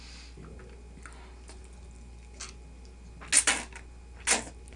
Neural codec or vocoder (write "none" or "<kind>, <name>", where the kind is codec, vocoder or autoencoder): none